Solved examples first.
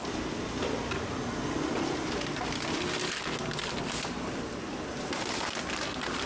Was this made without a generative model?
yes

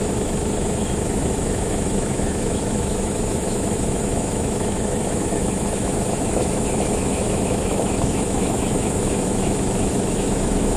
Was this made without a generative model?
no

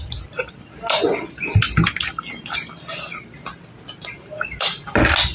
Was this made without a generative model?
yes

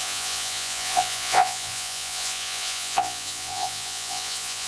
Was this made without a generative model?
no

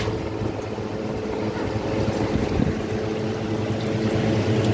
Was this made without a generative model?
yes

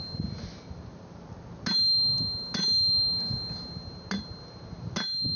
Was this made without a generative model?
yes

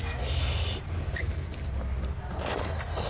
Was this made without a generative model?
yes